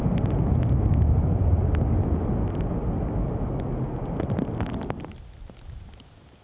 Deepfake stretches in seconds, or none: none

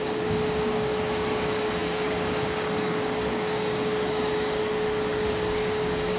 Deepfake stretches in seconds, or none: 0.0-4.6 (codec, DAC); 5.3-6.2